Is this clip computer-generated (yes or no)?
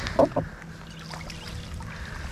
no